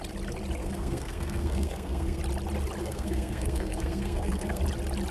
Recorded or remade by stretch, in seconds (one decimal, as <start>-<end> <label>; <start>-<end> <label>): 0.0-0.6 recorded; 0.6-2.2 remade; 2.2-2.8 recorded; 2.8-4.6 remade; 4.6-5.1 recorded